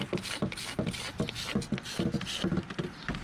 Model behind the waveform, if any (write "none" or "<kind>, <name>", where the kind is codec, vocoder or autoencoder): none